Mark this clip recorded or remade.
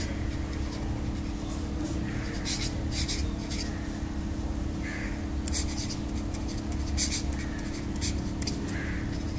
recorded